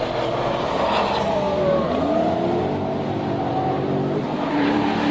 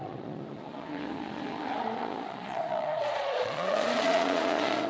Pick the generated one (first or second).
second